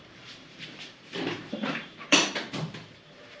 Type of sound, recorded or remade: remade